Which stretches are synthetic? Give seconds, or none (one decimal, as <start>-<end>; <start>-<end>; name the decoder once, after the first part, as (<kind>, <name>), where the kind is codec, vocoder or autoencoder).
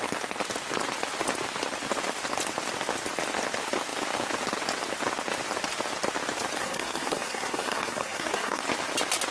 6.6-8.6 (codec, SNAC)